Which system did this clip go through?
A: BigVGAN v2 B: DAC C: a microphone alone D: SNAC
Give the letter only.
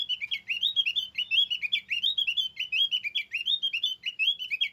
C